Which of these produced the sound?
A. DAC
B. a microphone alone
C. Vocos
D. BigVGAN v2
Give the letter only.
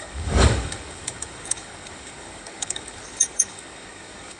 A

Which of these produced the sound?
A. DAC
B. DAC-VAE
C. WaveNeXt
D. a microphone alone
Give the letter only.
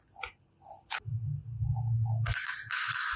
D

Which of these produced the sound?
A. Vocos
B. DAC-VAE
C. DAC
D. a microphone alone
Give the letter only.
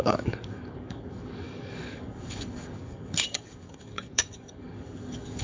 C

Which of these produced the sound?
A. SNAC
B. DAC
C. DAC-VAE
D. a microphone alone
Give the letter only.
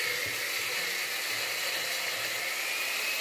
D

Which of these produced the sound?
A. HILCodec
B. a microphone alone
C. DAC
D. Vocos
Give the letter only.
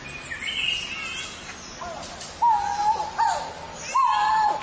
B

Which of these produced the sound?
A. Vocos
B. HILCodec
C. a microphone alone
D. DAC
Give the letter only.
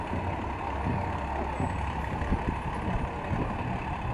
C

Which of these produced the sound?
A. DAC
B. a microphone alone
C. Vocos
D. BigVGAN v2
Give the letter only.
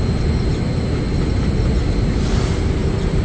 B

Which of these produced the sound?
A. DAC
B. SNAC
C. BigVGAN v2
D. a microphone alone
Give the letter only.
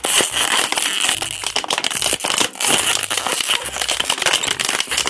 D